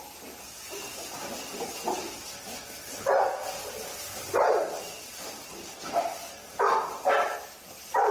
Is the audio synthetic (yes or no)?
no